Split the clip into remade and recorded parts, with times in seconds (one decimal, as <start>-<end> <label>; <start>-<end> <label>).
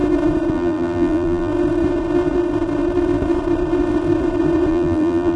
0.0-0.5 recorded; 0.5-1.5 remade; 1.5-4.7 recorded; 4.7-5.4 remade